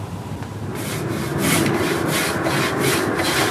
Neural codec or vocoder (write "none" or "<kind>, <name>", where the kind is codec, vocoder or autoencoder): none